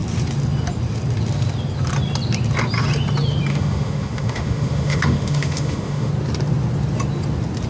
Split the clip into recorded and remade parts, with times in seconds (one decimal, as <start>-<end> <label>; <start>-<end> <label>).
0.0-3.5 recorded; 3.5-6.1 remade; 6.1-7.7 recorded